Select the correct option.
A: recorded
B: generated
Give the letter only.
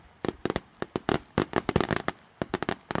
A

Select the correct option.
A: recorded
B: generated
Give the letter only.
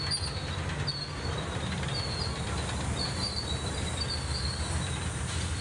A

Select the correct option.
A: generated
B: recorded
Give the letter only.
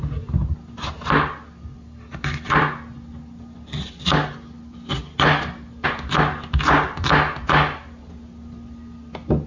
B